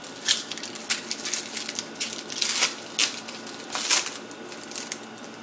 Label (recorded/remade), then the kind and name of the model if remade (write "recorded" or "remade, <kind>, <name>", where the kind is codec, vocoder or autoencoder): recorded